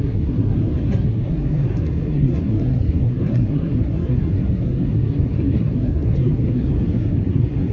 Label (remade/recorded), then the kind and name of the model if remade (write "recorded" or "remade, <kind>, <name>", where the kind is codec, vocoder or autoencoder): remade, codec, SNAC